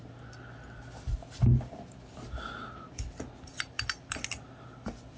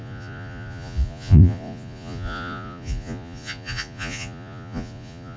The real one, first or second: first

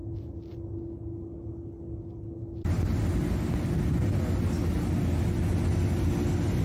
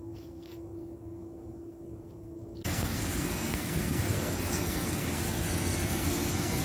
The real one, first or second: first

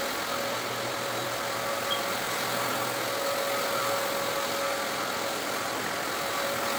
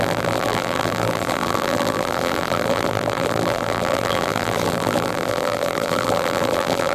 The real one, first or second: first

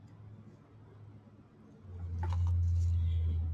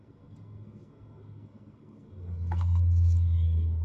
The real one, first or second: first